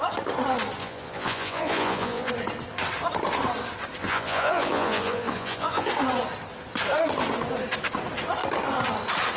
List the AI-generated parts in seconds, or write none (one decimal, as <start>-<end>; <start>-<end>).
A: 0.8-2.3; 4.0-5.9